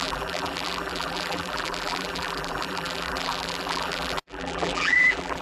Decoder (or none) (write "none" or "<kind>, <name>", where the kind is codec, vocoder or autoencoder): vocoder, BigVGAN v2